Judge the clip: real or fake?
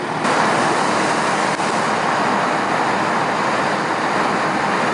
real